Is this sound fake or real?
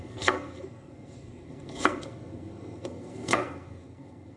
fake